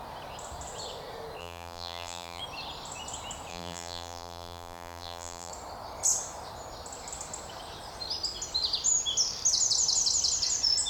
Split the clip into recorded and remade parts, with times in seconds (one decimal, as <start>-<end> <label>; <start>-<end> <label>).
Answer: 0.0-1.4 recorded; 1.4-2.4 remade; 2.4-3.5 recorded; 3.5-5.5 remade; 5.5-10.9 recorded